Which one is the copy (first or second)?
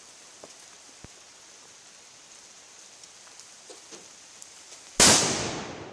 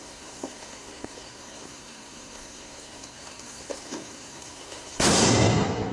second